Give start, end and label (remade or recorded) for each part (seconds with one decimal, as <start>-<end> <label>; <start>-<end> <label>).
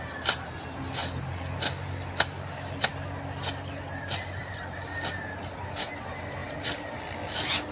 0.0-1.0 recorded; 1.0-1.6 remade; 1.6-6.4 recorded; 6.4-7.0 remade; 7.0-7.7 recorded